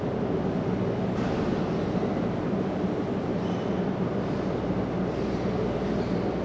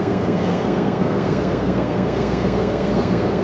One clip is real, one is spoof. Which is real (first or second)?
first